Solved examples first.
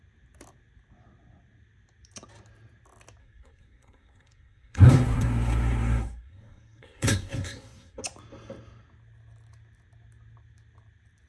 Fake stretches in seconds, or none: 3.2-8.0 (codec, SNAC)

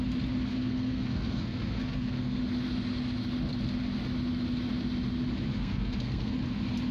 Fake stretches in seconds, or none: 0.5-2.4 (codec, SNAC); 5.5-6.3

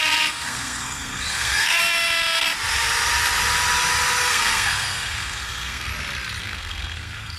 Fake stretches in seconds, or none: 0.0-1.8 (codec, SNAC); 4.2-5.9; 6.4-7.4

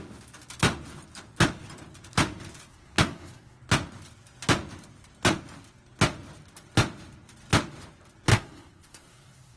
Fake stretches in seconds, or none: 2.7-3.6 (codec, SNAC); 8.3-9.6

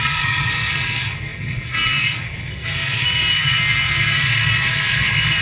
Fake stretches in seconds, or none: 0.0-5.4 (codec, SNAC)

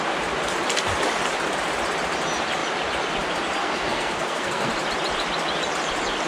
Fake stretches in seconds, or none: 3.6-4.7 (codec, SNAC)

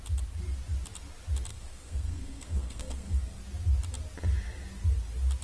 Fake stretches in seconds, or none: 1.5-3.4 (codec, SNAC)

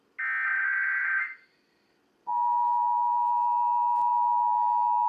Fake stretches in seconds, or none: none